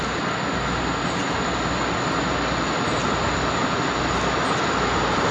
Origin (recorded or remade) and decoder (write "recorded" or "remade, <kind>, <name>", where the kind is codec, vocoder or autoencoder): recorded